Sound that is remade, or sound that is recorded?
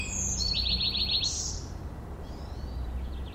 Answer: recorded